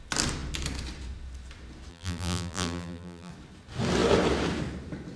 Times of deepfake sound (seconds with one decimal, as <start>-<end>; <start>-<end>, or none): 1.9-3.3